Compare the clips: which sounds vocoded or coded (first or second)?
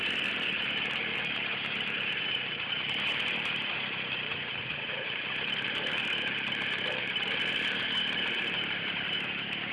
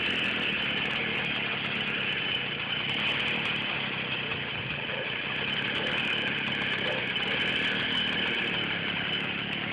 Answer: first